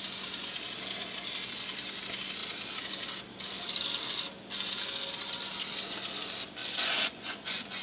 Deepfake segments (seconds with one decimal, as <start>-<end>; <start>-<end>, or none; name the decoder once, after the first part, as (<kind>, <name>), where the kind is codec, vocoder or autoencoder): 6.6-7.8 (vocoder, Vocos)